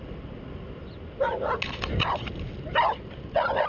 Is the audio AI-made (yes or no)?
no